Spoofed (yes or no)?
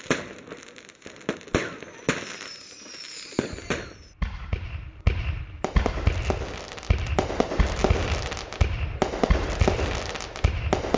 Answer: no